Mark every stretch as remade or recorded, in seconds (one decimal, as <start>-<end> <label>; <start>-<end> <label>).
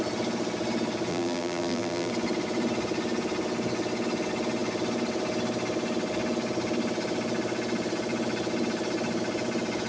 0.0-1.1 recorded; 1.1-2.1 remade; 2.1-9.9 recorded